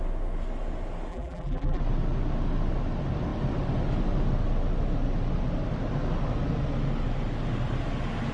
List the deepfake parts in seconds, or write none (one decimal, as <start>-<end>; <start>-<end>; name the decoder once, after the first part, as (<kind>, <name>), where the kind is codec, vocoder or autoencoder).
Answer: 1.1-1.8 (vocoder, BigVGAN v2)